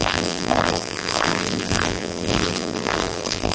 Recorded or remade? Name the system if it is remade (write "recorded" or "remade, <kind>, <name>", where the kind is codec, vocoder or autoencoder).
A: remade, vocoder, BigVGAN v2